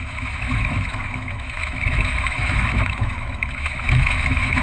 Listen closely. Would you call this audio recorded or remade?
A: remade